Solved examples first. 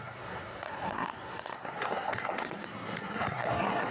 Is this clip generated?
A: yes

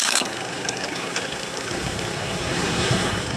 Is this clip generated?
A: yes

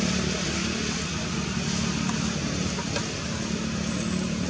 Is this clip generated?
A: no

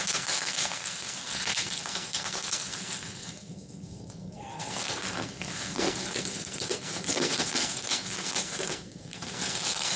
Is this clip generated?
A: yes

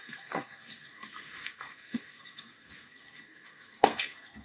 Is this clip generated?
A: yes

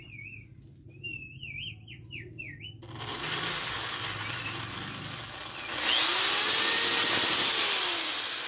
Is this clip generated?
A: no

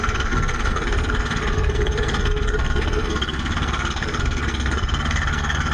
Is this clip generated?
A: yes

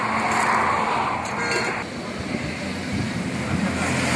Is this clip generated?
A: no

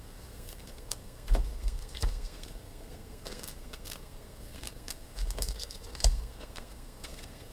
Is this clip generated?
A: yes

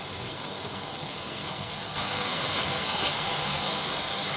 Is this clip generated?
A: yes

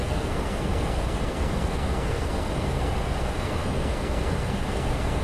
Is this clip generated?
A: yes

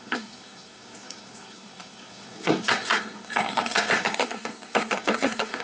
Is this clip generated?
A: yes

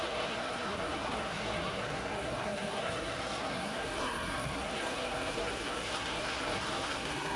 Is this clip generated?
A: yes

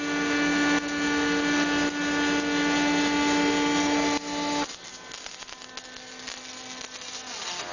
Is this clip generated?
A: no